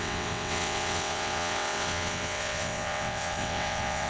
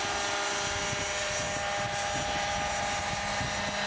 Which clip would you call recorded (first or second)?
second